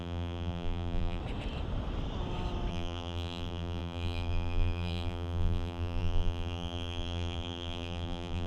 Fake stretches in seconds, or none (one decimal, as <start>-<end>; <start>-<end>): 0.0-1.2; 2.7-8.5

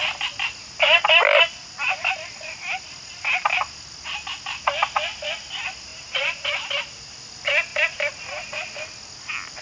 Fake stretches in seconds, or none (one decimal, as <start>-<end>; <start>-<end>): 1.6-2.1; 5.9-6.8

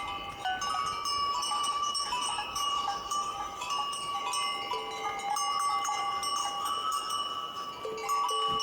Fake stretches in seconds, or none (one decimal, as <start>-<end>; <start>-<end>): 1.1-4.2; 6.4-7.7

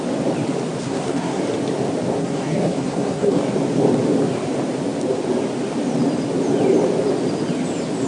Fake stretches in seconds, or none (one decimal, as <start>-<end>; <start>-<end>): 0.8-1.4; 2.2-3.4

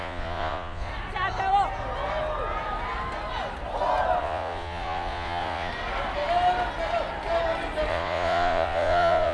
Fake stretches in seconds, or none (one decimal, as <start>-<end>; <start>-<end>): 0.0-0.9; 4.2-5.7; 7.9-9.3